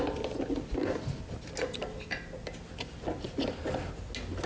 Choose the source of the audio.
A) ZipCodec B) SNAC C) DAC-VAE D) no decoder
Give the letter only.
D